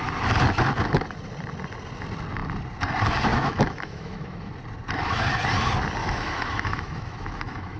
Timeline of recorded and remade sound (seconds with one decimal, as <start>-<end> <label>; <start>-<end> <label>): 0.0-3.3 recorded; 3.3-4.5 remade; 4.5-6.0 recorded; 6.0-7.8 remade